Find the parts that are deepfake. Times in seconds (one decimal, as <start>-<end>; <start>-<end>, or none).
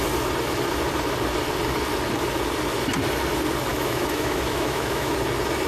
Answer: 3.7-5.1